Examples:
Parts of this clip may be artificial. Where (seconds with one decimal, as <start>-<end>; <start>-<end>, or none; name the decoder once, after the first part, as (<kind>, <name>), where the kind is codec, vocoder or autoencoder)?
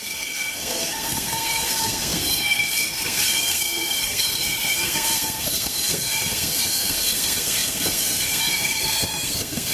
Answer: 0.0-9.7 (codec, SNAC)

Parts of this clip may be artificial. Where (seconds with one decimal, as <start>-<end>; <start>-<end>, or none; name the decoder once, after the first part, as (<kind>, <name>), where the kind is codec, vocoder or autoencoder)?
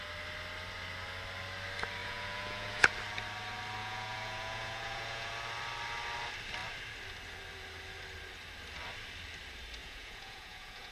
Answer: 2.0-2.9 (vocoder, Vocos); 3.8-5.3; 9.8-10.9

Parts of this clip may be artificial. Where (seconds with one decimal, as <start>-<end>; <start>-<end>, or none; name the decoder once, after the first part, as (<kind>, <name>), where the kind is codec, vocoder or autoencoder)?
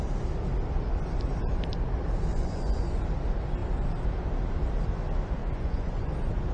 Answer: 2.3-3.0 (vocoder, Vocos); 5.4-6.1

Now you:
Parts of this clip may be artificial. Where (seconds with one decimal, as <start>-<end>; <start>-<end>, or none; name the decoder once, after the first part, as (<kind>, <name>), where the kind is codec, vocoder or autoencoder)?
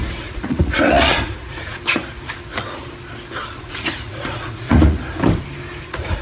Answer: 0.0-1.7 (vocoder, Vocos); 3.6-5.0; 5.8-6.2